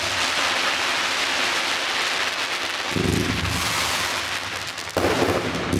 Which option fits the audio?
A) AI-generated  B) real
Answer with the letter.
B